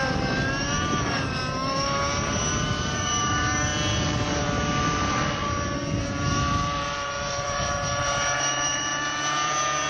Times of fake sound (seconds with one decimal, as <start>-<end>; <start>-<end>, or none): 0.0-3.7; 6.0-9.9